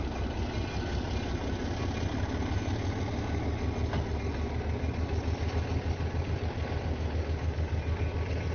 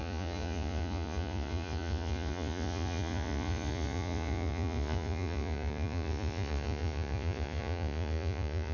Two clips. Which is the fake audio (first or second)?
second